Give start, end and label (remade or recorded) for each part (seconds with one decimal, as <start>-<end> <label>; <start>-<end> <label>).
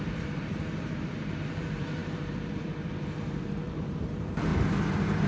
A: 0.0-4.5 remade; 4.5-5.3 recorded